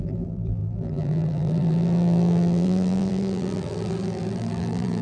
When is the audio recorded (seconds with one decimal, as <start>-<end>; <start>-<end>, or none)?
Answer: none